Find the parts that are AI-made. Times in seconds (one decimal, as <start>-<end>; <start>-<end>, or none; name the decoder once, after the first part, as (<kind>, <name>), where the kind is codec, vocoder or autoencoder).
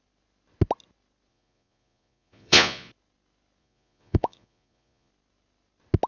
1.3-2.9 (vocoder, Vocos); 3.6-5.1